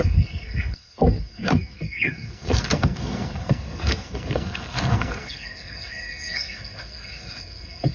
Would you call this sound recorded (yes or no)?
no